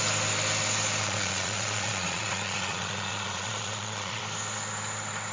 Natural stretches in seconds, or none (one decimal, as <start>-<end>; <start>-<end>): 0.0-1.0; 4.2-5.3